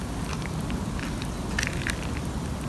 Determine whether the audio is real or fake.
real